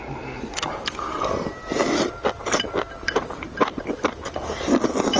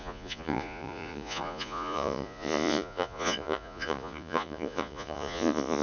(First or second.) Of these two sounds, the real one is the first